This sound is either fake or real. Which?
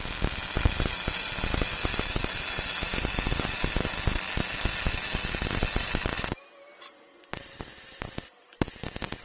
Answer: real